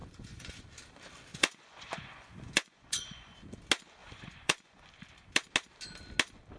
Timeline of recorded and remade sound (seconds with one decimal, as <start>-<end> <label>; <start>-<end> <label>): 0.0-0.6 remade; 0.6-1.3 recorded; 1.3-3.4 remade; 3.4-4.0 recorded; 4.0-4.9 remade; 4.9-6.6 recorded